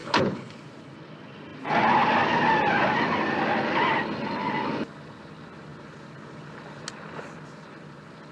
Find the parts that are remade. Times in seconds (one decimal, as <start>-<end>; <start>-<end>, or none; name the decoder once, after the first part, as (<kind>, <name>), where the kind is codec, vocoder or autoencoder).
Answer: 0.0-0.5 (codec, HILCodec)

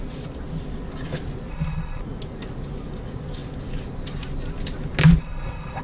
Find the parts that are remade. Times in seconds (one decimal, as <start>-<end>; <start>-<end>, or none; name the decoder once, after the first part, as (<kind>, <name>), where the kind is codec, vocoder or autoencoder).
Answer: 1.5-2.0 (codec, HILCodec); 5.2-5.8

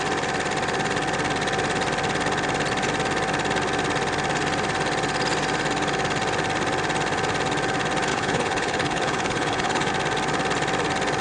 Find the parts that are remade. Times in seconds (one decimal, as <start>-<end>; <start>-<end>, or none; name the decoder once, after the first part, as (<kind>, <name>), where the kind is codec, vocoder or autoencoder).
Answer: 8.1-9.9 (codec, HILCodec)

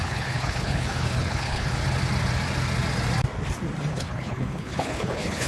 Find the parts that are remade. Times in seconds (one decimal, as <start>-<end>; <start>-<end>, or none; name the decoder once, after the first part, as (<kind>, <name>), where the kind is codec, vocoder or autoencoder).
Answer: 0.0-1.8 (codec, HILCodec); 3.9-5.5